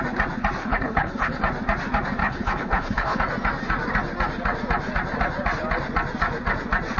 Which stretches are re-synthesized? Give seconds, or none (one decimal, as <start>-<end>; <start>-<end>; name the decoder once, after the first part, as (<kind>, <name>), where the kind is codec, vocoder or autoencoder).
0.6-1.4 (codec, HILCodec); 2.2-3.2